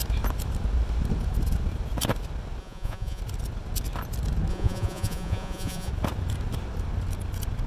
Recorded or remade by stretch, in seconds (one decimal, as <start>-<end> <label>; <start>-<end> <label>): 0.0-2.6 recorded; 2.6-3.2 remade; 3.2-4.5 recorded; 4.5-5.9 remade; 5.9-7.7 recorded